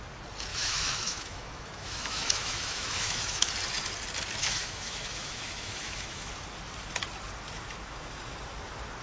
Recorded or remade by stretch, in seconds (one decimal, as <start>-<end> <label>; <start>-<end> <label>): 0.0-0.5 recorded; 0.5-3.5 remade; 3.5-4.4 recorded; 4.4-6.3 remade; 6.3-9.0 recorded